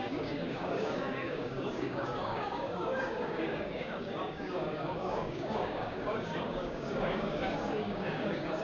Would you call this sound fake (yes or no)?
yes